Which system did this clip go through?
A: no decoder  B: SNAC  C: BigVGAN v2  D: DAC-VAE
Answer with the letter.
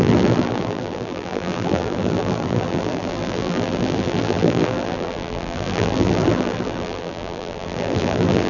C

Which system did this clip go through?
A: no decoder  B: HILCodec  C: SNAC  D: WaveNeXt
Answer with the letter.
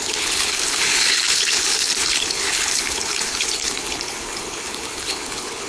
B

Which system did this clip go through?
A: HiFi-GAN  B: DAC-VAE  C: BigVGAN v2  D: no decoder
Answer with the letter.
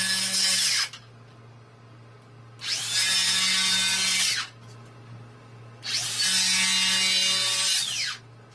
D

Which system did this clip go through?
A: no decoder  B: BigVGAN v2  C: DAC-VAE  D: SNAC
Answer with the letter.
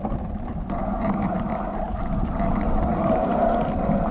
A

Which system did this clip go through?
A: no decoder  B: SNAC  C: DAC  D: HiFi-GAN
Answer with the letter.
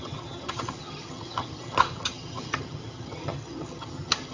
D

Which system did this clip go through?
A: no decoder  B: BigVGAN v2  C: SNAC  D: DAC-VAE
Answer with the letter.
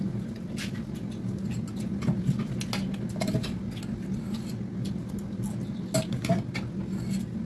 A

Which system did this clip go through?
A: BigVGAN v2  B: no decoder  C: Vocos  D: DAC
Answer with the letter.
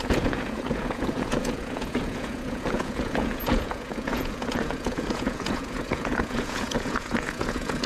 C